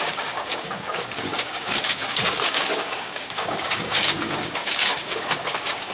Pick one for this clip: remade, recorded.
remade